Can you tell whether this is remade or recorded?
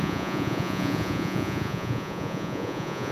remade